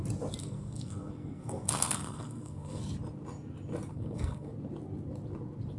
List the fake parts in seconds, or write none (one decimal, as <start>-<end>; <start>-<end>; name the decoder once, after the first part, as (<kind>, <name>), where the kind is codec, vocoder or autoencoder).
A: 0.4-2.8 (codec, SNAC); 3.9-4.5